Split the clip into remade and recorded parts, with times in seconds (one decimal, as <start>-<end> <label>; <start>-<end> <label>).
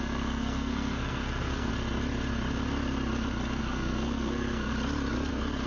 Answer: 0.0-1.7 remade; 1.7-3.6 recorded; 3.6-4.7 remade; 4.7-5.3 recorded; 5.3-5.7 remade